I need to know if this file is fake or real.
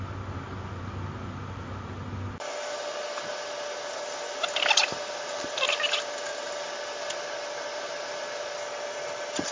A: real